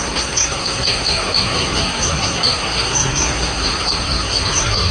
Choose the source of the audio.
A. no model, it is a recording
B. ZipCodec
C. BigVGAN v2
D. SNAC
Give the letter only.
D